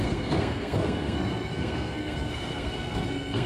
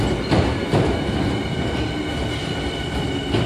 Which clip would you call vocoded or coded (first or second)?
first